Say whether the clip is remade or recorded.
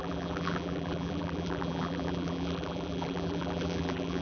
remade